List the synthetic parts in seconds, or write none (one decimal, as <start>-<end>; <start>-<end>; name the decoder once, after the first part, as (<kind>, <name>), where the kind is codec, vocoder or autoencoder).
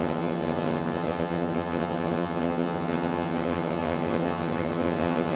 0.0-5.4 (vocoder, HiFi-GAN)